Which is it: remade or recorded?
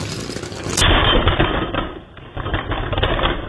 recorded